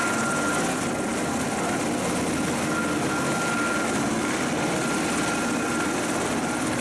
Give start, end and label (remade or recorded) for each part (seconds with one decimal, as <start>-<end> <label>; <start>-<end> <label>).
0.0-6.8 recorded